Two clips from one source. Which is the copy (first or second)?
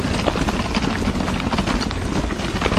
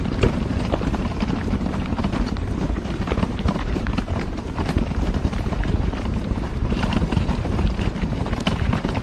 second